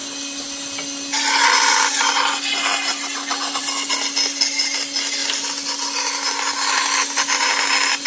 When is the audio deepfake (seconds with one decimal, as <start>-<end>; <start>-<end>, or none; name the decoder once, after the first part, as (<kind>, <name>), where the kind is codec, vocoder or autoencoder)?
none